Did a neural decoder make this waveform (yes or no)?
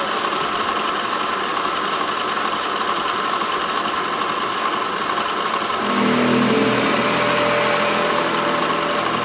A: no